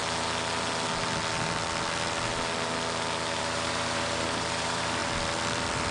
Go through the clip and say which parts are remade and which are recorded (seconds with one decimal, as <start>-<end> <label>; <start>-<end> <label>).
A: 0.0-3.4 recorded; 3.4-5.9 remade